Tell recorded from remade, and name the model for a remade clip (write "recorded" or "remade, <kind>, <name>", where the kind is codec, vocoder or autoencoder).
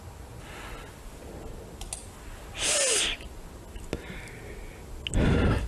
recorded